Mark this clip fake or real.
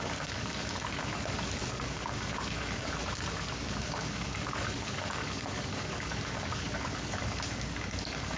fake